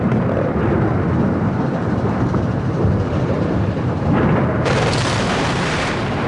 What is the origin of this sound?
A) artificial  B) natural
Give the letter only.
A